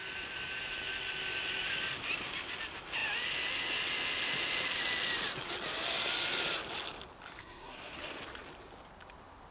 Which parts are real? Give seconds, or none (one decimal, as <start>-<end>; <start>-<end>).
0.0-7.4; 8.0-9.5

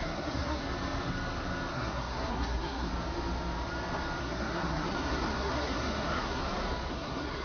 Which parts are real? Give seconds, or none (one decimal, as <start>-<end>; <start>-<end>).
0.6-1.7; 2.9-4.2; 6.4-6.9

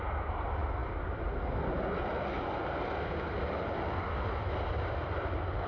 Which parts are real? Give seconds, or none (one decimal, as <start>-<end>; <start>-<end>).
0.0-5.7

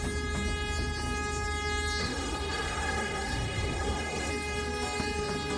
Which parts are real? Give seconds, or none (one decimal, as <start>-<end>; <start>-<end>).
0.0-2.0; 4.3-5.6

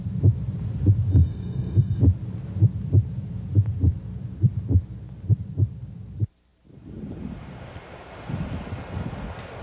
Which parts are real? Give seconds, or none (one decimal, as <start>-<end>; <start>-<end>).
0.0-1.1; 2.0-9.6